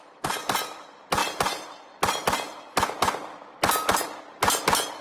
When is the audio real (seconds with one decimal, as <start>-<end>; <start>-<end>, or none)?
0.0-5.0